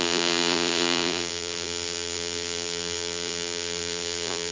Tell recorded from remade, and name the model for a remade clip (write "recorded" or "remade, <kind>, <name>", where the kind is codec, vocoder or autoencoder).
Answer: remade, vocoder, BigVGAN v2